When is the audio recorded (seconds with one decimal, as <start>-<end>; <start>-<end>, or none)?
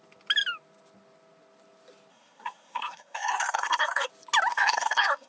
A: 0.0-2.1; 4.1-4.5